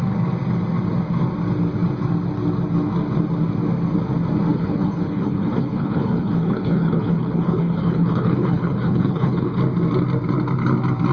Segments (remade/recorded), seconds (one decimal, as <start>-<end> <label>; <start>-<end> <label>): 0.0-4.5 recorded; 4.5-9.6 remade; 9.6-11.1 recorded

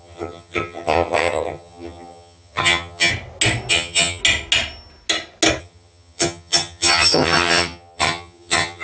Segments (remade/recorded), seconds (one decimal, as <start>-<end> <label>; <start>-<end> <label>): 0.0-3.1 remade; 3.1-3.7 recorded; 3.7-4.2 remade; 4.2-5.6 recorded; 5.6-8.8 remade

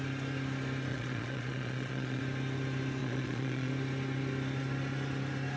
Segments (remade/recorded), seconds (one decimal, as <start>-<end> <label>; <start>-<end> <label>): 0.0-0.9 recorded; 0.9-2.2 remade; 2.2-3.0 recorded; 3.0-3.7 remade; 3.7-5.6 recorded